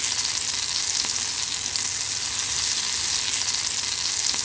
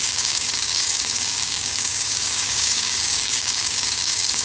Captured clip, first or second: first